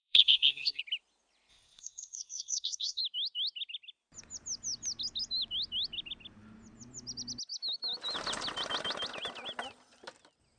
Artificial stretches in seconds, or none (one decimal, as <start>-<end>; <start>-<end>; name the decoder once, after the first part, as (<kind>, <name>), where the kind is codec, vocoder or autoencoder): 0.0-0.8 (codec, SNAC); 1.5-3.0